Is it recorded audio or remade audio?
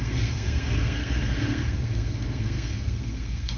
remade